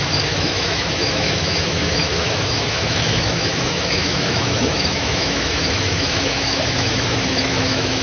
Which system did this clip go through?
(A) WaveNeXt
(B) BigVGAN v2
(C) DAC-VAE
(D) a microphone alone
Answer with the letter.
C